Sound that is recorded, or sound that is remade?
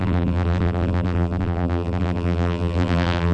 remade